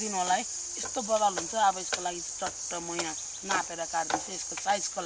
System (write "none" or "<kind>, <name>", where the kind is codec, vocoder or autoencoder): none